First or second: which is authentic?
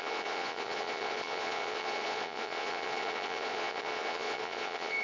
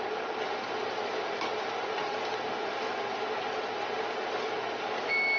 second